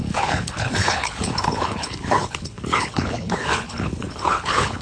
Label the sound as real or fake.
fake